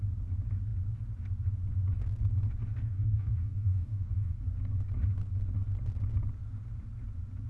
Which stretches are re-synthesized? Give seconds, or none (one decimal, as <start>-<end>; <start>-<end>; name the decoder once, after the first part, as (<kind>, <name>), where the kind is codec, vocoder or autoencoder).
2.8-4.4 (codec, DAC)